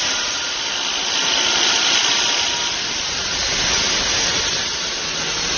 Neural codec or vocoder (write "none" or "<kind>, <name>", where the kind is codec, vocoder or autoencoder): none